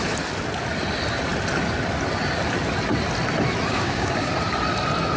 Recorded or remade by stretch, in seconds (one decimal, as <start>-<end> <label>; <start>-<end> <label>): 0.0-3.7 recorded; 3.7-4.3 remade; 4.3-5.2 recorded